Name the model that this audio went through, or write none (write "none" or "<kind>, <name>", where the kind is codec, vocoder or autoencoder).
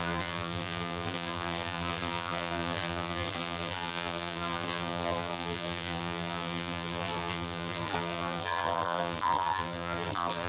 vocoder, BigVGAN v2